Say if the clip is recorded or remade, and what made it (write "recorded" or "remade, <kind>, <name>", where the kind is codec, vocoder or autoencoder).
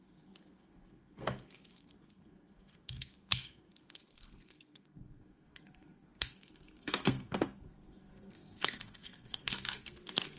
remade, codec, SNAC